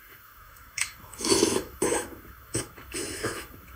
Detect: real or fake fake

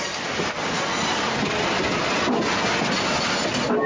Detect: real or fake real